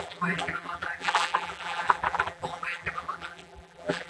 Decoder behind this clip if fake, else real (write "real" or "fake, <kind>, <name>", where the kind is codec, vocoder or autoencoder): fake, vocoder, BigVGAN v2